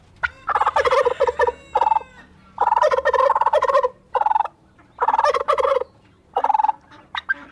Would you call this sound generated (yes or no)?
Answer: no